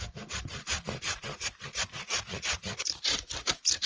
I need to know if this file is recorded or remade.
remade